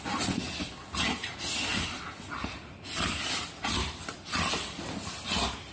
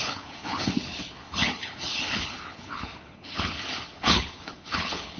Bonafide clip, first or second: first